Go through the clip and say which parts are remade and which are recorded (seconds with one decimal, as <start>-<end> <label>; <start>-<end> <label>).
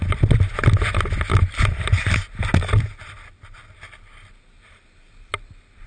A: 0.0-5.9 recorded